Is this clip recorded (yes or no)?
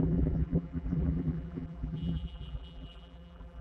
no